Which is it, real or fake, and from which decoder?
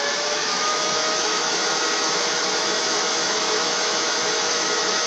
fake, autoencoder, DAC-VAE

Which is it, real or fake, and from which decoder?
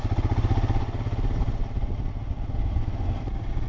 real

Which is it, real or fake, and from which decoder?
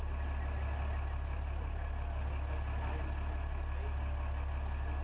real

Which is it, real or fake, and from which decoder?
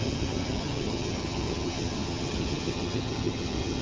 fake, vocoder, HiFi-GAN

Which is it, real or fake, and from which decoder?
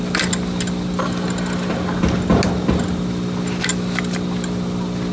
real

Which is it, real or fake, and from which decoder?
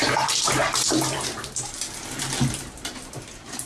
fake, vocoder, BigVGAN v2